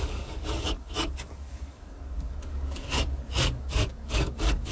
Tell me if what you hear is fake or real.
fake